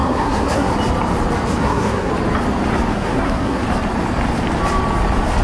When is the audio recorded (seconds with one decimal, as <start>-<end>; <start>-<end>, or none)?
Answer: 0.7-1.6; 2.1-2.9; 3.6-5.4